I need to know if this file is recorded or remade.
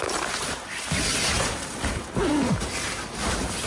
recorded